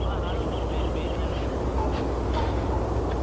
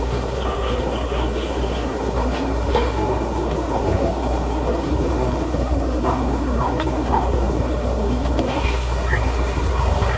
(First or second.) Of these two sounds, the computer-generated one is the second